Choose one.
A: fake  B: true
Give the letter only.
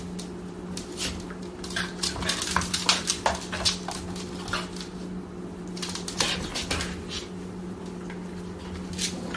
B